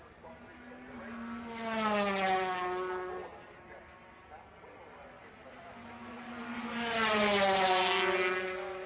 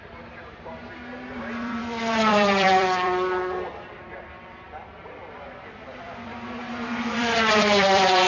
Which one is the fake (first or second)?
second